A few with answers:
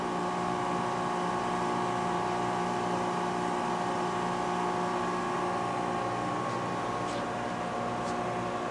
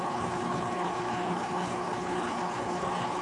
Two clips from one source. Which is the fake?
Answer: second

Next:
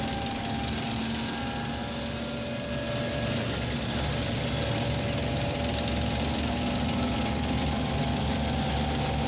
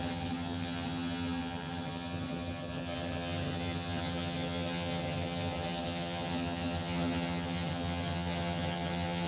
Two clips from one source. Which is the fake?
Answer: second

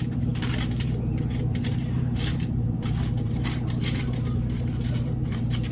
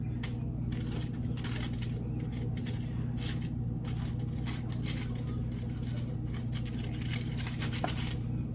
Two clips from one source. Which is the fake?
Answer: first